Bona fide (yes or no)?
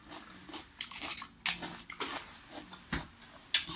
yes